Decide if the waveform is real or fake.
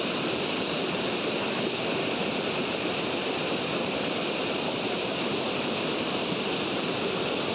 real